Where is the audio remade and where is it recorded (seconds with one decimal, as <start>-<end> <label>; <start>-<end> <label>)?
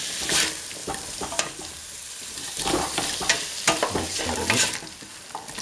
0.0-0.8 recorded; 0.8-4.2 remade; 4.2-5.6 recorded